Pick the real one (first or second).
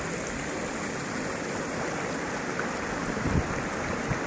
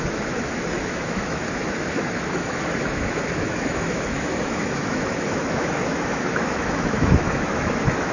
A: first